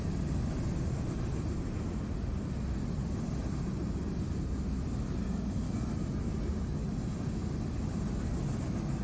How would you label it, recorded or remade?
recorded